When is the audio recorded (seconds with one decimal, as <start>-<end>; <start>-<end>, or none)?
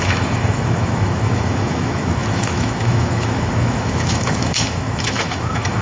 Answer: none